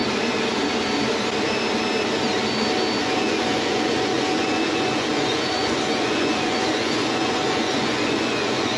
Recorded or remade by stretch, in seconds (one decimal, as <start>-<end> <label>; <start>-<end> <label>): 0.0-3.0 recorded; 3.0-8.8 remade